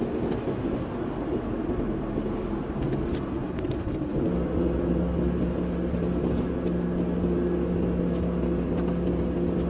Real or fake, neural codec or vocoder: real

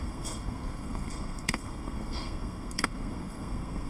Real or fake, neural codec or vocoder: fake, codec, SNAC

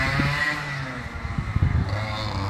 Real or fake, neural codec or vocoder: real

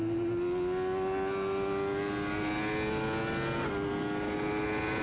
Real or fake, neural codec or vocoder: real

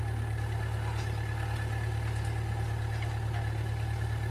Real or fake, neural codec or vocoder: real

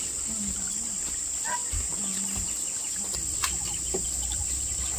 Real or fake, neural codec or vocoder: real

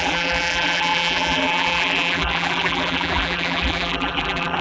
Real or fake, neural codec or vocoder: fake, vocoder, BigVGAN v2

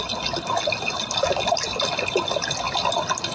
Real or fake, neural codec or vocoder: real